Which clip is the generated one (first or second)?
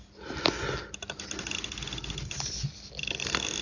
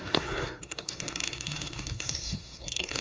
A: second